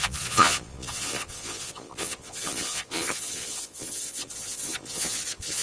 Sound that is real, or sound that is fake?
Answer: fake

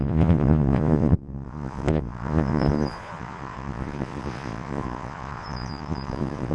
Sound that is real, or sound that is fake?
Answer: fake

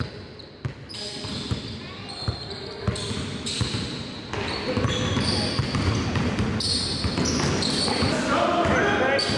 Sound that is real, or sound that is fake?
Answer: real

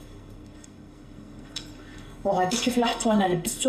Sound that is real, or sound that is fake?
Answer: fake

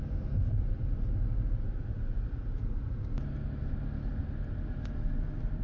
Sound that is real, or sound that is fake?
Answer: real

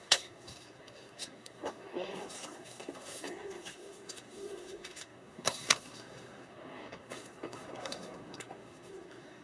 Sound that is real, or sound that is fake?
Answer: fake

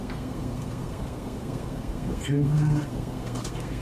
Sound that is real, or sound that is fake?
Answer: fake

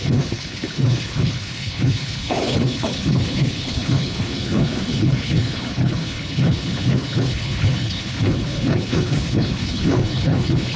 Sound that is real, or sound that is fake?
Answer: fake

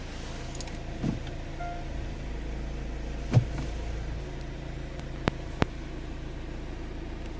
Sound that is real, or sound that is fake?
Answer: real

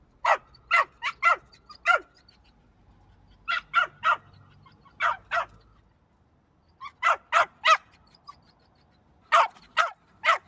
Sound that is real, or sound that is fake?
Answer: real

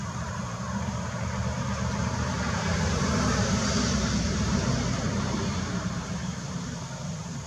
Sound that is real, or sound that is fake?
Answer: fake